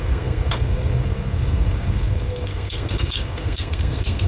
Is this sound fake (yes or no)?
yes